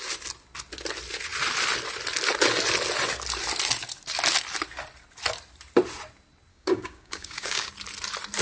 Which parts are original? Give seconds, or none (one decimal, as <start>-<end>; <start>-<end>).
0.0-6.5; 7.7-8.4